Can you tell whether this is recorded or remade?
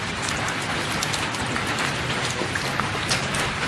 recorded